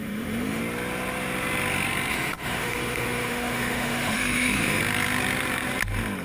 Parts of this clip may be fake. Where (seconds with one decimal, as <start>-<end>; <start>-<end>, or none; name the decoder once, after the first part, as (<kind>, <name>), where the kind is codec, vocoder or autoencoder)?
0.0-0.6 (autoencoder, DAC-VAE); 2.1-4.8